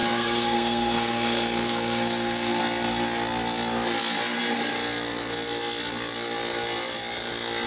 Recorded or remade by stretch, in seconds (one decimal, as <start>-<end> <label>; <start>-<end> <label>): 0.0-2.6 remade; 2.6-7.7 recorded